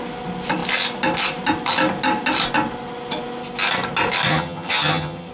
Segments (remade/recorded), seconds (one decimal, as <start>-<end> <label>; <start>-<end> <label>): 0.0-4.3 recorded; 4.3-5.3 remade